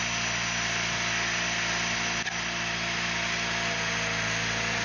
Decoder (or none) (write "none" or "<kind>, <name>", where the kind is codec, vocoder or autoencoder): none